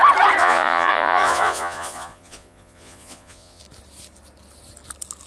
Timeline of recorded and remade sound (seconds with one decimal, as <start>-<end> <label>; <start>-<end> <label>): 0.0-0.4 recorded; 0.4-3.6 remade; 3.6-5.3 recorded

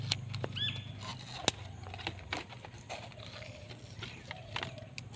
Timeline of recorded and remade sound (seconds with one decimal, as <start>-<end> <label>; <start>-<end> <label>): 0.0-5.2 recorded

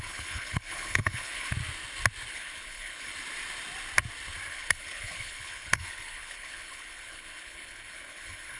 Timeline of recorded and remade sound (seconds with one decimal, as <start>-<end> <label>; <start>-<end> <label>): 0.0-1.5 remade; 1.5-2.3 recorded; 2.3-3.1 remade; 3.1-4.5 recorded; 4.5-8.6 remade

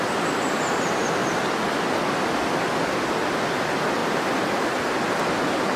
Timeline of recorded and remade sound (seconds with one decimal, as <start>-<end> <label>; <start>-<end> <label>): 0.0-5.8 recorded

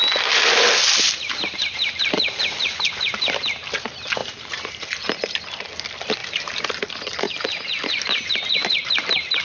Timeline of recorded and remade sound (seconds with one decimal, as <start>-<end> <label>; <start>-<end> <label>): 0.0-4.2 recorded; 4.2-5.1 remade; 5.1-6.2 recorded; 6.2-6.7 remade; 6.7-9.4 recorded

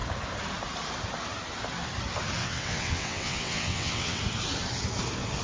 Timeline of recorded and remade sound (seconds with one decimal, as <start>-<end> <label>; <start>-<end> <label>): 0.0-2.4 recorded; 2.4-4.2 remade; 4.2-5.4 recorded